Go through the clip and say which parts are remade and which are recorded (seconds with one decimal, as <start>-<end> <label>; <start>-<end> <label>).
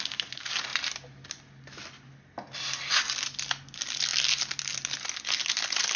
0.0-6.0 recorded